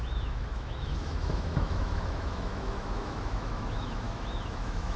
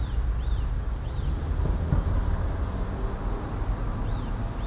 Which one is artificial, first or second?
first